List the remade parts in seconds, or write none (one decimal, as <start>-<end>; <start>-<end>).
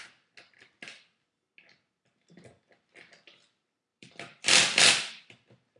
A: 3.9-4.8